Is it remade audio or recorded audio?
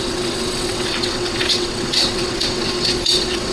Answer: remade